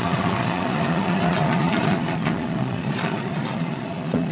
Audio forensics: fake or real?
fake